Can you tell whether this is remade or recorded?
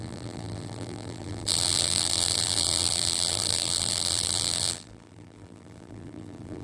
remade